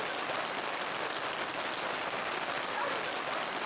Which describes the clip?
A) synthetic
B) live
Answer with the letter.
B